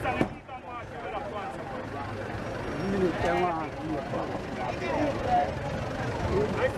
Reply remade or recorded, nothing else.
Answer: recorded